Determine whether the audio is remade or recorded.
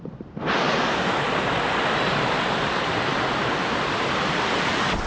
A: recorded